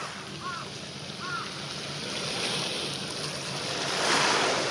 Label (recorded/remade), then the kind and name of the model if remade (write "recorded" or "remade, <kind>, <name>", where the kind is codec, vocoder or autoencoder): recorded